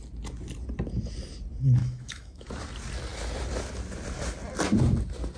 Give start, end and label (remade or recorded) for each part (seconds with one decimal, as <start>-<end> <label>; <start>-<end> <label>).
0.0-1.8 recorded; 1.8-2.5 remade; 2.5-5.4 recorded